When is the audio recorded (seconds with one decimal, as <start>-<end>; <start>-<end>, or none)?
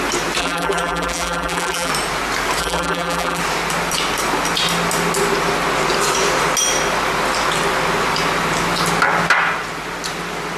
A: 0.0-0.4; 1.9-2.6; 3.4-10.6